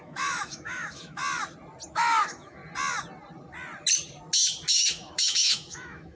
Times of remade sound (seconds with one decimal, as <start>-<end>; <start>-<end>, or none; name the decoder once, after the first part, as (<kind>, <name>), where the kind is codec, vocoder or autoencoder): 0.0-1.2 (autoencoder, DAC-VAE); 1.9-2.6; 4.7-6.2